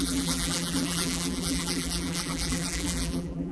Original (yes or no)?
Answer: no